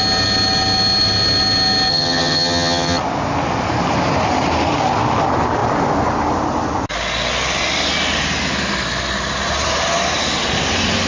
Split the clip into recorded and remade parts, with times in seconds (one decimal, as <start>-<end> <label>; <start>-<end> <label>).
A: 0.0-1.9 recorded; 1.9-3.0 remade; 3.0-11.1 recorded